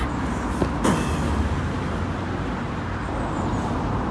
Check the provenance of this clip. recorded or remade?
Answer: recorded